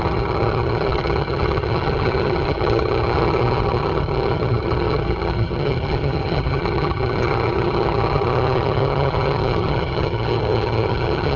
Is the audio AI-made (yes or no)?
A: yes